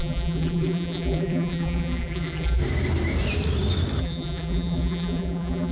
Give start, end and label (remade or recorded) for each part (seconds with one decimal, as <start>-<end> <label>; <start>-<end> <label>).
0.0-2.6 remade; 2.6-4.0 recorded; 4.0-5.7 remade